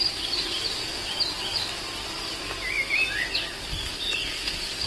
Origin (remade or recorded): recorded